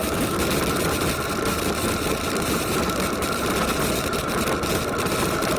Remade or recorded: remade